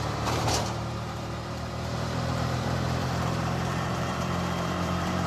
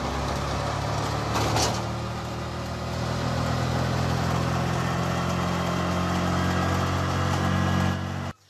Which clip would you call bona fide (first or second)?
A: second